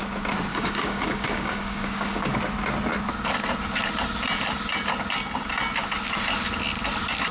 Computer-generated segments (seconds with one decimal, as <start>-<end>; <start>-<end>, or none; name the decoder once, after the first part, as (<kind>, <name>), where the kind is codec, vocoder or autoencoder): 0.5-2.4 (codec, DAC)